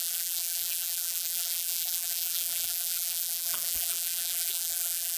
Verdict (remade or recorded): remade